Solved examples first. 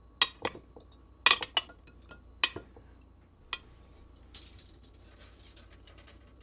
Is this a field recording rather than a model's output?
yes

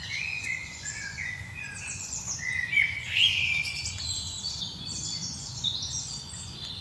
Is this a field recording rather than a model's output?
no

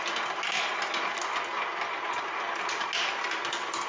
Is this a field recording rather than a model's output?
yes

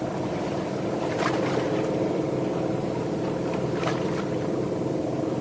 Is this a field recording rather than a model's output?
no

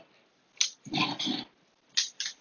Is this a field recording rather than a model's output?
yes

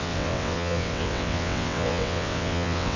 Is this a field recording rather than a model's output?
no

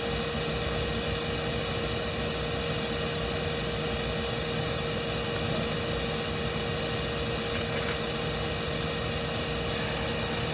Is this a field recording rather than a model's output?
yes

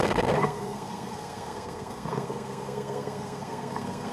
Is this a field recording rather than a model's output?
no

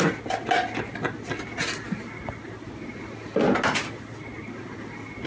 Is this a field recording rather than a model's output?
yes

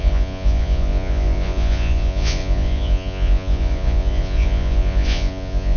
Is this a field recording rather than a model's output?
no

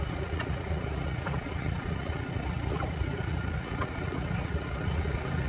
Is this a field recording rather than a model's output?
no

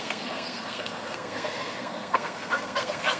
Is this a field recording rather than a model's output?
no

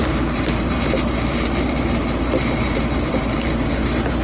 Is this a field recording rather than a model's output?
no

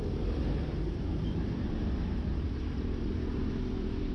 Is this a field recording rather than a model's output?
no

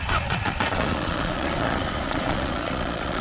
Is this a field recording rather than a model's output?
no